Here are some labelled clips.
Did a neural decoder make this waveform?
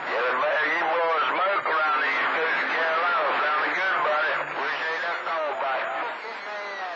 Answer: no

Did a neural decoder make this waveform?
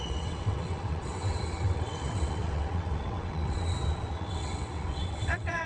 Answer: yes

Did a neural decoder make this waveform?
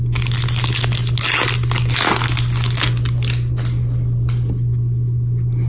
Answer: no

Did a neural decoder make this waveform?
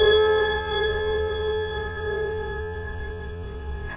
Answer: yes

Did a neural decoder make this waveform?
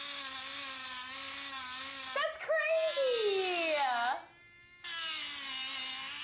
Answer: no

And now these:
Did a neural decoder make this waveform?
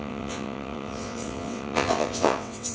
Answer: yes